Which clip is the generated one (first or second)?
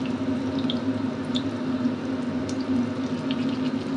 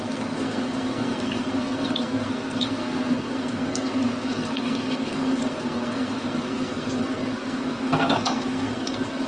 second